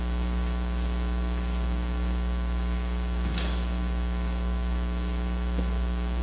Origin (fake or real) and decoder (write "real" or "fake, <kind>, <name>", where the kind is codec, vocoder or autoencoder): fake, codec, DAC